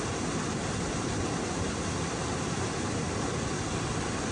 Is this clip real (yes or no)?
yes